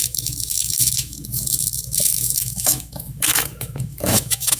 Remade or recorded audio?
remade